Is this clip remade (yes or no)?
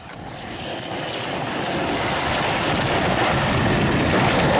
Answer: no